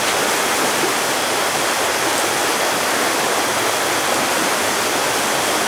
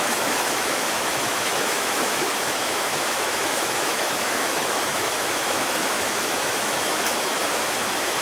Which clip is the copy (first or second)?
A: second